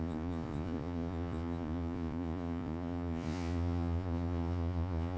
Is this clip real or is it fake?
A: fake